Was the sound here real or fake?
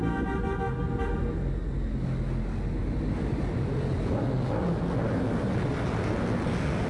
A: real